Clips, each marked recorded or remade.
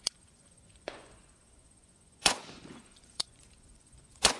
remade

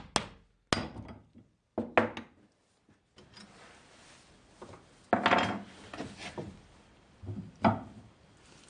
recorded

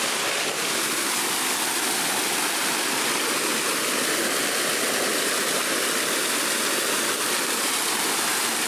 recorded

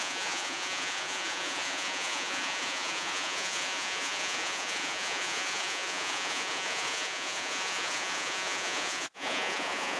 remade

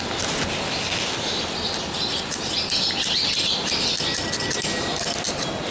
recorded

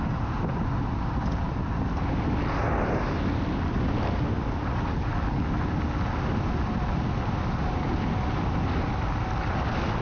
recorded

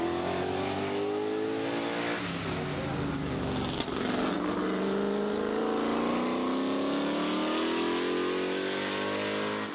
recorded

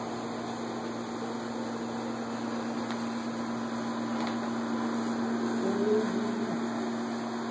recorded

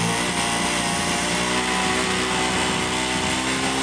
recorded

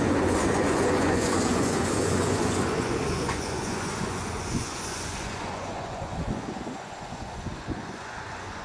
remade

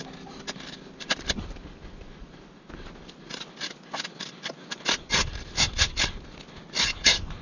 recorded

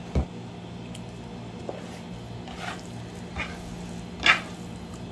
recorded